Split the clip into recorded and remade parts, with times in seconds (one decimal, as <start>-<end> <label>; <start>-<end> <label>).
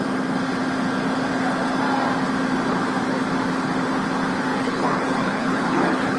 0.0-4.5 recorded; 4.5-6.2 remade